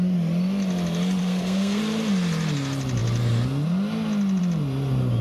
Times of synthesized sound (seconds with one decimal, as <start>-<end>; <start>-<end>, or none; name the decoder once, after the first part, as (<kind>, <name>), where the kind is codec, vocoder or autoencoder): 1.2-1.8 (codec, SNAC)